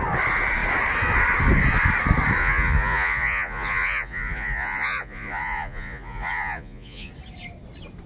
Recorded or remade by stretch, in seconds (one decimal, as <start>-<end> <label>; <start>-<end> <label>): 0.0-2.4 recorded; 2.4-7.1 remade; 7.1-8.1 recorded

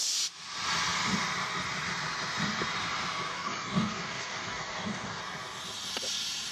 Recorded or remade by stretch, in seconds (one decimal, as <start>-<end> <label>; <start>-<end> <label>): 0.0-3.3 recorded; 3.3-5.2 remade; 5.2-6.5 recorded

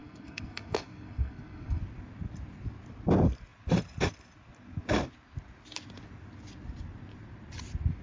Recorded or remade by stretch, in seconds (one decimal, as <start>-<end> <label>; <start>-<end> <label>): 0.0-1.8 remade; 1.8-8.0 recorded

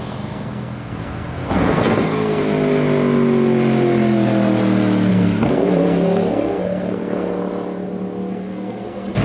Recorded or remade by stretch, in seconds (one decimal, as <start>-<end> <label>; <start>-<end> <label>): 0.0-2.4 remade; 2.4-5.1 recorded; 5.1-7.4 remade; 7.4-8.3 recorded; 8.3-9.2 remade